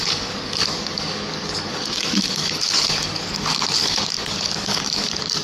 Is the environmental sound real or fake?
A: fake